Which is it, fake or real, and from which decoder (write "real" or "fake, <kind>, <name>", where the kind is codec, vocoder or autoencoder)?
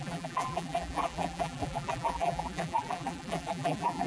fake, vocoder, BigVGAN v2